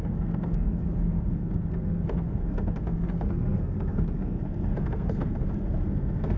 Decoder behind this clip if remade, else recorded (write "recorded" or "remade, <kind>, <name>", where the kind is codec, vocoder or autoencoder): remade, codec, SNAC